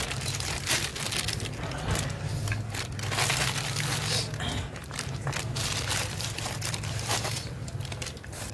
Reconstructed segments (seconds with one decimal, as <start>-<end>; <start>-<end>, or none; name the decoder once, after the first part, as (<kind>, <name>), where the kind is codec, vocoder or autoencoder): 0.0-0.9 (vocoder, BigVGAN v2); 4.6-8.5